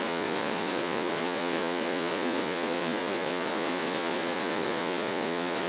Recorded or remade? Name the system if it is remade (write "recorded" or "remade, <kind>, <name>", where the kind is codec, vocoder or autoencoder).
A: remade, vocoder, Vocos